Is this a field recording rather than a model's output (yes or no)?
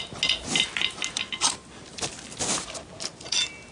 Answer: yes